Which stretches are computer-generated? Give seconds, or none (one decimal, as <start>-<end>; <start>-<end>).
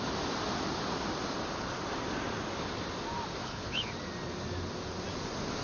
3.4-3.9